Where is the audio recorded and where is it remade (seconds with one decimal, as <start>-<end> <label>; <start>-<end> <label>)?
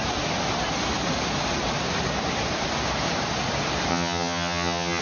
0.0-3.9 recorded; 3.9-5.0 remade